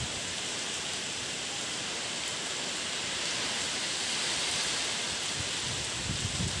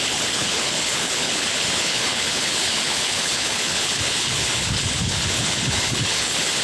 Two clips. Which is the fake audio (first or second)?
second